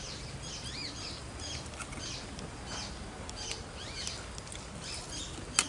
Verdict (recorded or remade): recorded